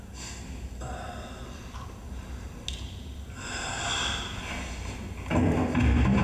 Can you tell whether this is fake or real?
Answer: real